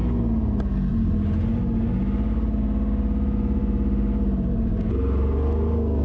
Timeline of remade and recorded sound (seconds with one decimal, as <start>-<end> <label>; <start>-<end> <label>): 0.0-3.6 recorded; 3.6-4.8 remade; 4.8-6.0 recorded